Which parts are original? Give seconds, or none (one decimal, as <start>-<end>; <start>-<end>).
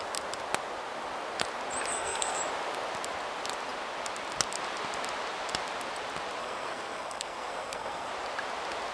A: 0.0-1.9; 2.4-6.4; 8.1-8.9